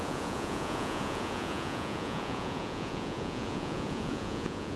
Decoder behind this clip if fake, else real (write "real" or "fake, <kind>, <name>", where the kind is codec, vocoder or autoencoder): fake, vocoder, Vocos